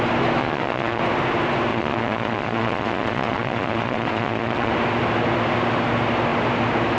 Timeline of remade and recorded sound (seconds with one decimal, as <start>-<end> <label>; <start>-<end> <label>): 0.0-0.4 recorded; 0.4-1.0 remade; 1.0-1.7 recorded; 1.7-4.7 remade; 4.7-7.0 recorded